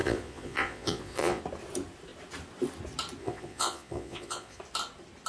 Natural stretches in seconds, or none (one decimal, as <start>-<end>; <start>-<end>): 1.4-3.2; 4.6-5.3